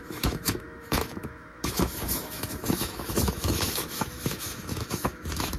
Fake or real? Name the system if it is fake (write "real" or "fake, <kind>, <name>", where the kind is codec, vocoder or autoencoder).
fake, autoencoder, DAC-VAE